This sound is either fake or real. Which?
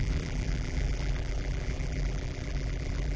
fake